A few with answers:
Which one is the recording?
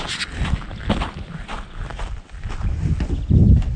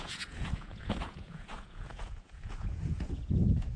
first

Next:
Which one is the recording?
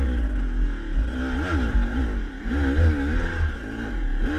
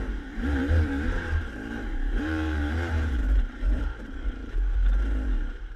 first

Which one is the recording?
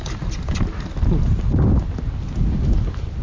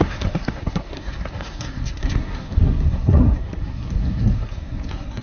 first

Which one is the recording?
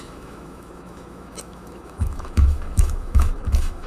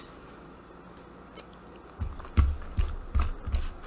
second